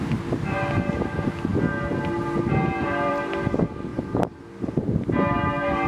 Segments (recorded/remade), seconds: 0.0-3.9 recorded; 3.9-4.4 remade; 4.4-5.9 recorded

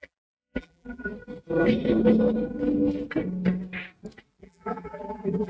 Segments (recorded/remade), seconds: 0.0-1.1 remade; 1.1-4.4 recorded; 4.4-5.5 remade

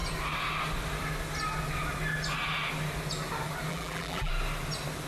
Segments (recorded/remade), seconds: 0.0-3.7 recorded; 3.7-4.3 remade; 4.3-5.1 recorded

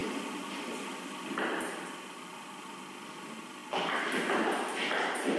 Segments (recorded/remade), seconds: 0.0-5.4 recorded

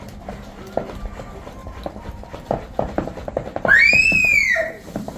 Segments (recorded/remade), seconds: 0.0-5.2 recorded